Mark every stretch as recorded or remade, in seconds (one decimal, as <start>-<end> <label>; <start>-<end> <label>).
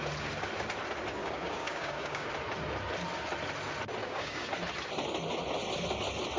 0.0-1.2 recorded; 1.2-2.3 remade; 2.3-4.0 recorded; 4.0-4.5 remade; 4.5-6.4 recorded